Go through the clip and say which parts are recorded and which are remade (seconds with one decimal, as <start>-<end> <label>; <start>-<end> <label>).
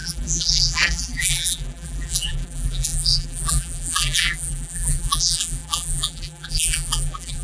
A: 0.0-7.4 remade